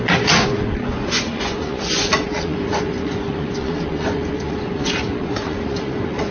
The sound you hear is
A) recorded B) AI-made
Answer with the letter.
B